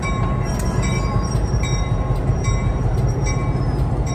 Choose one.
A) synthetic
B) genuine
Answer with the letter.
A